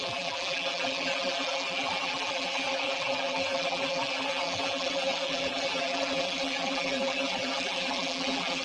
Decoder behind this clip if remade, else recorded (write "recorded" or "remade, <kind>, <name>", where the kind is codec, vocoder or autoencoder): remade, vocoder, BigVGAN v2